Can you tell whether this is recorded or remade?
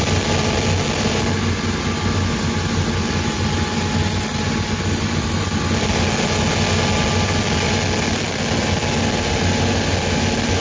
recorded